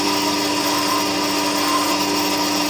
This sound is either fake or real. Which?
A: real